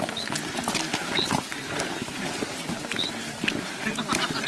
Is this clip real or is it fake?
real